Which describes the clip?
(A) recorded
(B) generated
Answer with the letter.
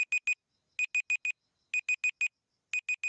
A